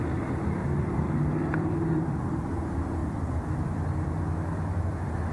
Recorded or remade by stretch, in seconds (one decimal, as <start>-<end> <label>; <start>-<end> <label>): 0.0-0.6 recorded; 0.6-2.1 remade; 2.1-3.0 recorded; 3.0-4.1 remade; 4.1-5.3 recorded